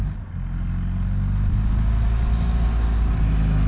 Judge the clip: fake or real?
real